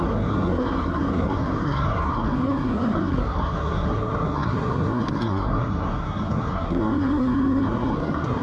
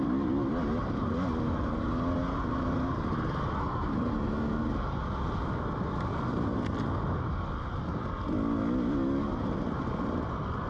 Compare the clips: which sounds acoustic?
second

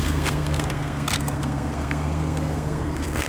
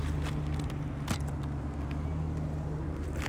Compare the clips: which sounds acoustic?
second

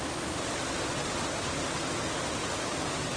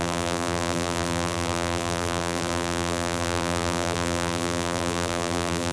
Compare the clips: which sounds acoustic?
first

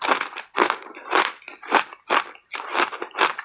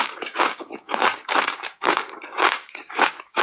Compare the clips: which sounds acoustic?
first